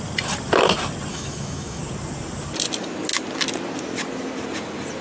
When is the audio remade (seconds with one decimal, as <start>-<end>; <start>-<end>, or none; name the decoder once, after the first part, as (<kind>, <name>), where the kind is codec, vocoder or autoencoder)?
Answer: 1.1-1.8 (autoencoder, DAC-VAE)